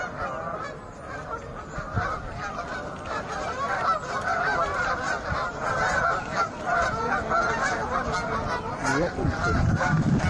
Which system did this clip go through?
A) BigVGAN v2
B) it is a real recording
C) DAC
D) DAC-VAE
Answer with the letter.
B